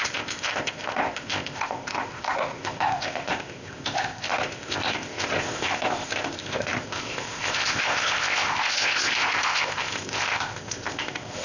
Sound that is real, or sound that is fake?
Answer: fake